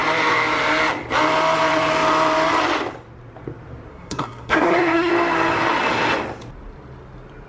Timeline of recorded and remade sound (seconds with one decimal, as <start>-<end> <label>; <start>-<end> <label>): 0.0-3.9 recorded; 3.9-5.1 remade; 5.1-7.5 recorded